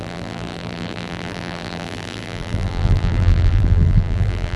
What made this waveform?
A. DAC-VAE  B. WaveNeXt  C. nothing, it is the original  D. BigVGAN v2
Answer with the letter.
D